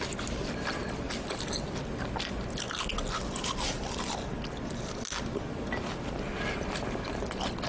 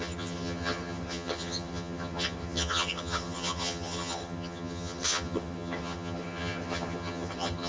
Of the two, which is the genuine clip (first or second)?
first